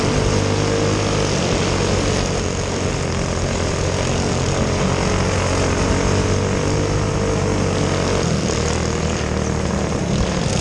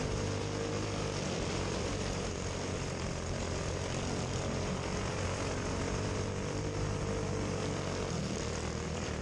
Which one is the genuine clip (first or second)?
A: first